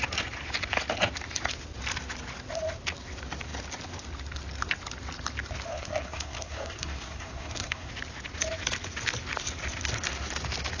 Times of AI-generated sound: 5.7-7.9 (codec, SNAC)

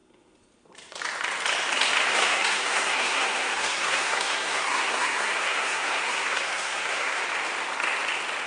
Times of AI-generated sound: 2.1-7.2 (codec, SNAC)

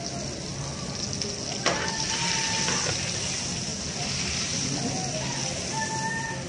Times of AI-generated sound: none

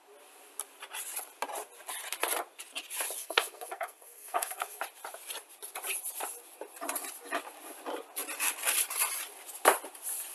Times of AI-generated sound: 3.2-4.8 (codec, SNAC)

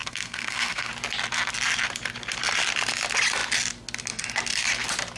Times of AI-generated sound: 0.0-0.9 (codec, SNAC)

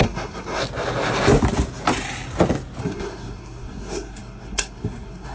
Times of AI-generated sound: 0.0-0.6 (codec, SNAC); 2.8-5.3

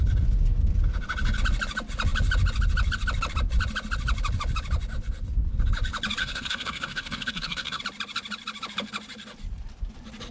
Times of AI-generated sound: 6.2-7.8 (codec, SNAC)